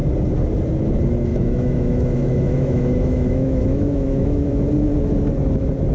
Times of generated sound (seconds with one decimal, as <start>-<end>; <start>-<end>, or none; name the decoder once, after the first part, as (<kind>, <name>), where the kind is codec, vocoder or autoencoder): 1.3-4.7 (autoencoder, DAC-VAE)